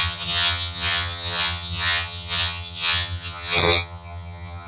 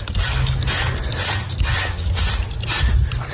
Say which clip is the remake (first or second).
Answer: first